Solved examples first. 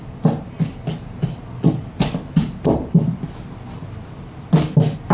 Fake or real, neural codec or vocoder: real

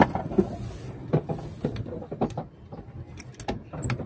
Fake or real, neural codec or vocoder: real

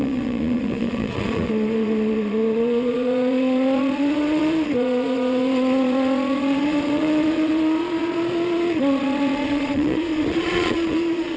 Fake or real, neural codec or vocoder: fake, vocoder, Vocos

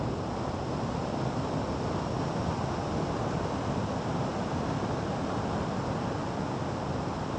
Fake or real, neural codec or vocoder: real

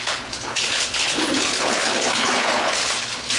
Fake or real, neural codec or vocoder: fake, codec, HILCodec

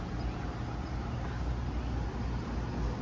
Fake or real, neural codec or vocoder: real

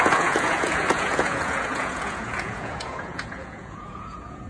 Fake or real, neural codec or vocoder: fake, vocoder, Vocos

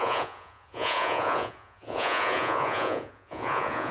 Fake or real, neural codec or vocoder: fake, vocoder, Vocos